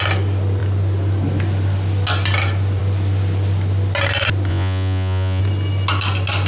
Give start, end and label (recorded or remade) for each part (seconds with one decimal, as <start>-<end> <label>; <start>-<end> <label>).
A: 0.0-4.5 recorded; 4.5-5.4 remade; 5.4-6.5 recorded